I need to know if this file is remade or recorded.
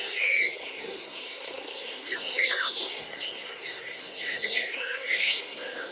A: remade